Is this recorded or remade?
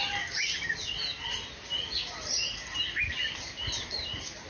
recorded